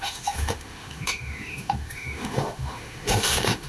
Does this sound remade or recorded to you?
remade